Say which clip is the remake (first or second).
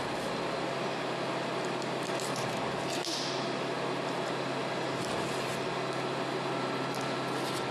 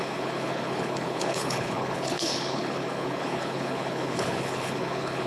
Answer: second